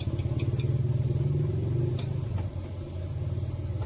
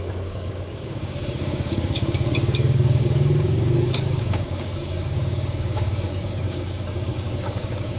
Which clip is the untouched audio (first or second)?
first